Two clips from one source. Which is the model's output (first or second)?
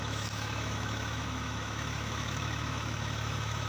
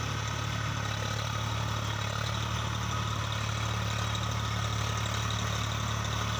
first